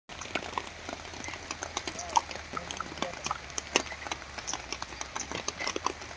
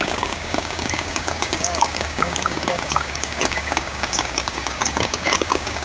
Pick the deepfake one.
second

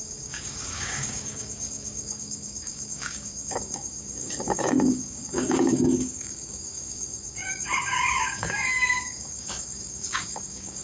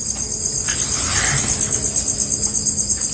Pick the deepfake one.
first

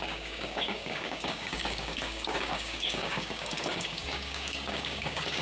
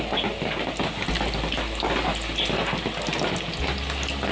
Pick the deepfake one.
first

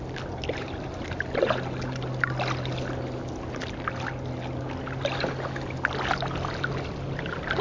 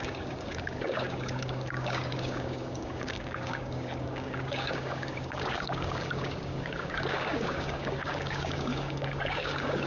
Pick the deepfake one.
second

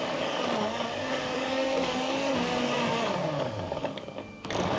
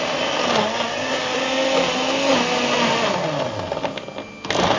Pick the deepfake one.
first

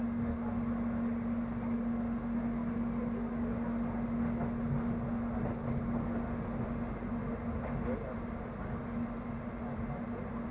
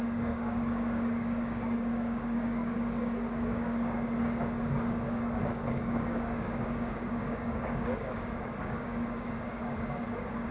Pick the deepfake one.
second